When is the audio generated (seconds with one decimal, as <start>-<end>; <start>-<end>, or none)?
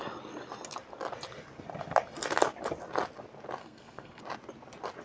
3.6-4.2